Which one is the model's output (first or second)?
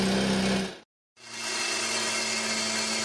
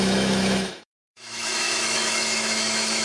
second